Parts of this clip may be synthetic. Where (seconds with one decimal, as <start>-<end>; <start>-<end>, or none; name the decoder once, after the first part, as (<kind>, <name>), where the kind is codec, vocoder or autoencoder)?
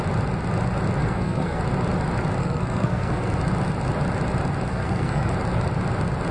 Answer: 1.0-1.6 (codec, SNAC); 2.4-3.4; 4.7-5.3